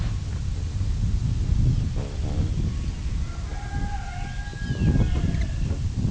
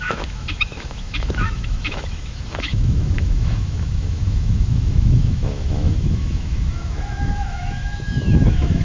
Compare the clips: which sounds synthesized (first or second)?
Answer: second